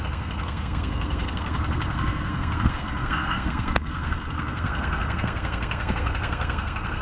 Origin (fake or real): fake